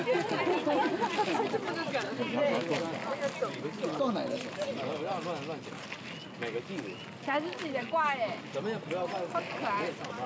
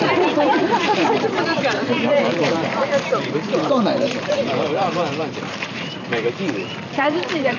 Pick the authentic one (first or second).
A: first